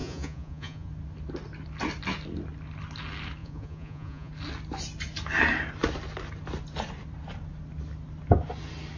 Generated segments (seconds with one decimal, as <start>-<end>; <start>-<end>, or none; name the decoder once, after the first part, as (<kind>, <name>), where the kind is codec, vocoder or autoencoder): 0.0-0.9 (vocoder, Vocos); 3.4-4.3